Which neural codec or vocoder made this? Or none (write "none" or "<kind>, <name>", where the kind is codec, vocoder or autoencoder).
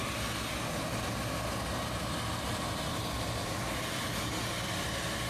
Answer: none